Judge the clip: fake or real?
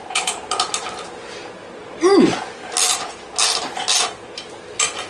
real